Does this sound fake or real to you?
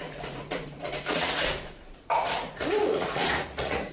fake